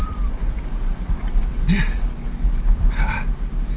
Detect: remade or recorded remade